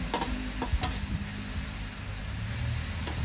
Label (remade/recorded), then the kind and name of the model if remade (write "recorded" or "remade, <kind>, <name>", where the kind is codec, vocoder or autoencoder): recorded